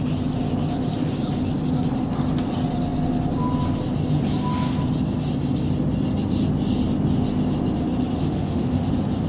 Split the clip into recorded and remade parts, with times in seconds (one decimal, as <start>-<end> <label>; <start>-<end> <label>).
0.0-8.2 recorded; 8.2-8.9 remade; 8.9-9.3 recorded